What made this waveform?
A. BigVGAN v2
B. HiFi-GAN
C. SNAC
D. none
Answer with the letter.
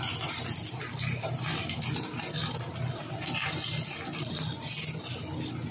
D